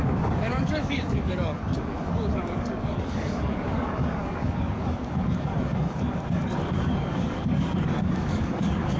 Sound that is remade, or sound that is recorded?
remade